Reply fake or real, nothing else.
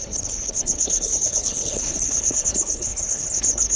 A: fake